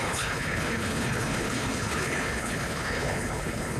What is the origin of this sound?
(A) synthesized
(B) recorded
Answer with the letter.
A